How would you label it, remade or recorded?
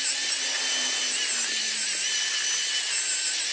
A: recorded